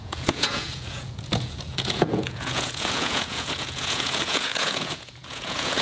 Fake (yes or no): yes